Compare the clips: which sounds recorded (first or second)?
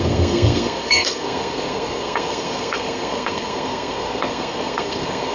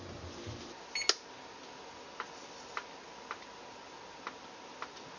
second